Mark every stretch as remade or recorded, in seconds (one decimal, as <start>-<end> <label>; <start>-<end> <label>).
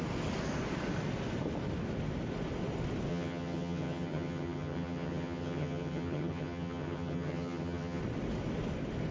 0.0-3.1 recorded; 3.1-8.0 remade; 8.0-9.1 recorded